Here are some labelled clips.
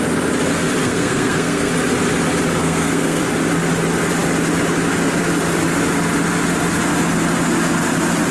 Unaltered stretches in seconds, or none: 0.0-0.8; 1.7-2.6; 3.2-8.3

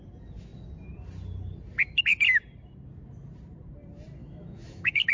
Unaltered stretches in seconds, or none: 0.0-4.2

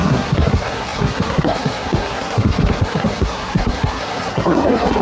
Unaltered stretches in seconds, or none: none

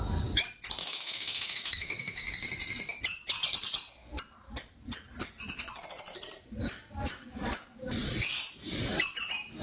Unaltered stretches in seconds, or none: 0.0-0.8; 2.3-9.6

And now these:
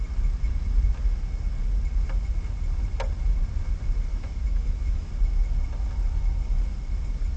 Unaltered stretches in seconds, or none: 0.0-4.1; 5.1-7.4

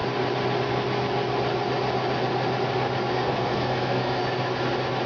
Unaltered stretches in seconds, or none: 0.0-3.1; 4.2-5.1

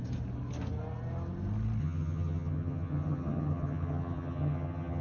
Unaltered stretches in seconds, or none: 0.0-1.8

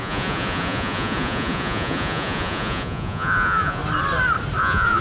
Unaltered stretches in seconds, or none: 3.8-4.6